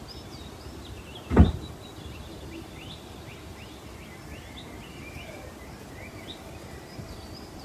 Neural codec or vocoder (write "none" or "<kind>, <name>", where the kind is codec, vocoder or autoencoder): vocoder, BigVGAN v2